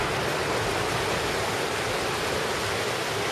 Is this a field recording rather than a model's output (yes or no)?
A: yes